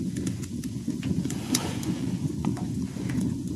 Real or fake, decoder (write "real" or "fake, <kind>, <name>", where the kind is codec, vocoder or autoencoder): fake, vocoder, Vocos